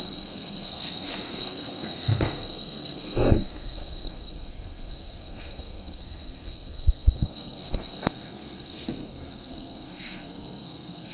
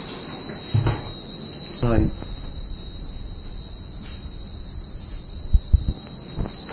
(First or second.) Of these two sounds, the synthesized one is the first